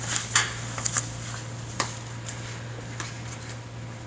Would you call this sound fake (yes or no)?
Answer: no